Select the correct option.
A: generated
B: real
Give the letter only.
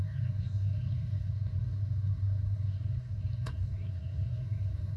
A